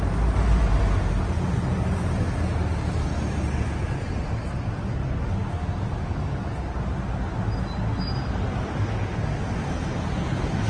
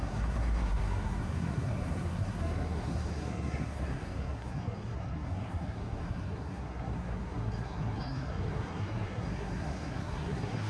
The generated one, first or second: second